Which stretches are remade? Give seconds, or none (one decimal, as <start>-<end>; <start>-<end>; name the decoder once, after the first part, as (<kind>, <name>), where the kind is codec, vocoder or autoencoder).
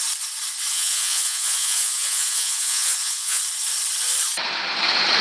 0.7-3.4 (vocoder, Vocos)